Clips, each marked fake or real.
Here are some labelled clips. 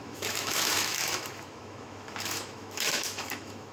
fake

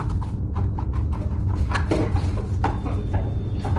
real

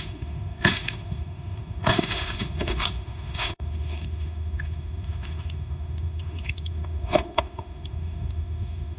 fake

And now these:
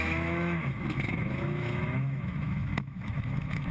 fake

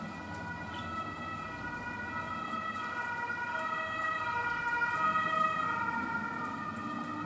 real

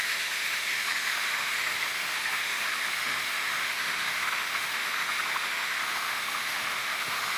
fake